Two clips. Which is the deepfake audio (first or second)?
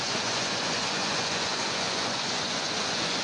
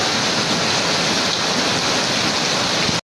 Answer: first